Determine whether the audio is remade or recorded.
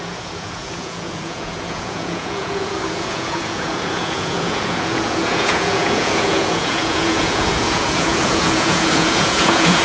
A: remade